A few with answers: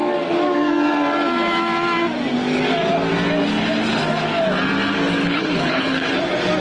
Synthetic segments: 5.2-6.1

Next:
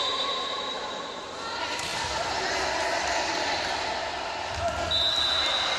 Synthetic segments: 0.0-1.9